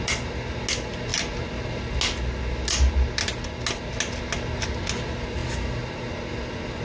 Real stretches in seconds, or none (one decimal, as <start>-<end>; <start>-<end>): 0.0-6.8

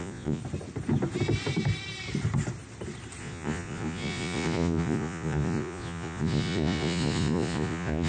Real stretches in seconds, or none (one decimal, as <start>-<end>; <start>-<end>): 0.4-3.2

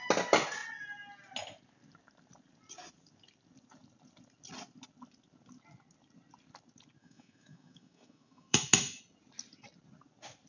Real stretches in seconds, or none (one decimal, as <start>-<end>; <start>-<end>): 0.0-7.0; 9.0-10.5

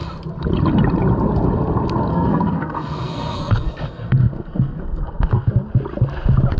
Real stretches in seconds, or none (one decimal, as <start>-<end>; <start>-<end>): 0.0-2.1; 5.5-6.6

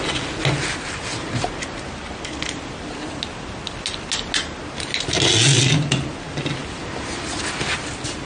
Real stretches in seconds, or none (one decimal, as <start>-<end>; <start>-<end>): 0.0-8.3

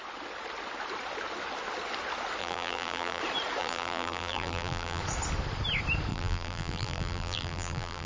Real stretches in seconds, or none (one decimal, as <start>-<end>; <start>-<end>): 0.0-2.4; 3.2-3.6; 5.0-6.1

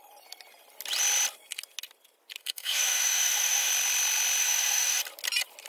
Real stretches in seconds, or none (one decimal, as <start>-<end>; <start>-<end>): 0.0-2.4; 3.7-4.4; 5.0-5.7